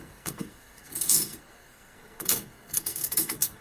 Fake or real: fake